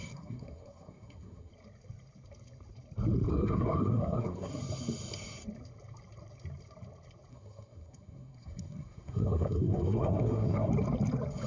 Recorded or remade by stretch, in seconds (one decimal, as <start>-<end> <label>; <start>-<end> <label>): 0.0-1.5 remade; 1.5-3.3 recorded; 3.3-4.5 remade; 4.5-7.3 recorded; 7.3-10.7 remade; 10.7-11.5 recorded